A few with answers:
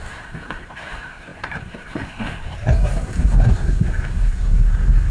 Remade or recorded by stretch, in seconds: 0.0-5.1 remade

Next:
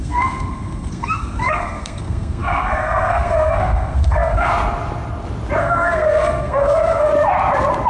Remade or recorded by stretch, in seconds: 0.0-4.5 remade; 4.5-5.6 recorded; 5.6-7.1 remade; 7.1-7.9 recorded

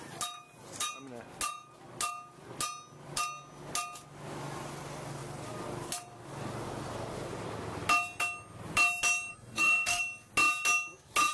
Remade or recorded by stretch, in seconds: 0.0-9.3 recorded; 9.3-10.0 remade; 10.0-11.3 recorded

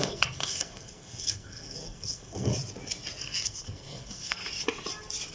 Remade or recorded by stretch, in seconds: 0.0-2.5 remade; 2.5-3.2 recorded; 3.2-4.4 remade; 4.4-5.3 recorded

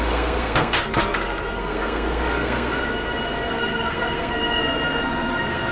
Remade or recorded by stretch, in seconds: 0.0-2.8 remade; 2.8-3.5 recorded; 3.5-5.7 remade